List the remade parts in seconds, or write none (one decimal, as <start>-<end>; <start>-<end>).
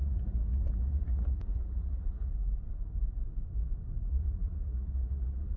0.0-2.3; 4.1-5.6